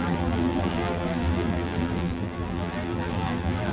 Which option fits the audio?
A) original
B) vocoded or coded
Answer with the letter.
B